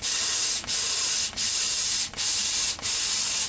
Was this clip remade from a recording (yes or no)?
no